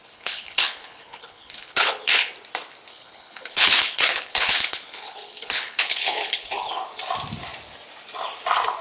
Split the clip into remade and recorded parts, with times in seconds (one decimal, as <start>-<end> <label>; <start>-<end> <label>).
0.0-2.3 remade; 2.3-2.9 recorded; 2.9-6.7 remade; 6.7-8.8 recorded